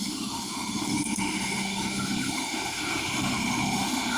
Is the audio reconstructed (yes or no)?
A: yes